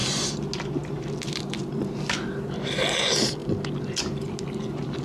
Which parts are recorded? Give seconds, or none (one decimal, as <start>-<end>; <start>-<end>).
0.0-5.0